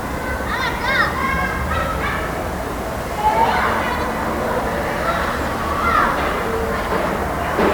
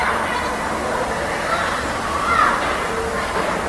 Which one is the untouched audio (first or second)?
first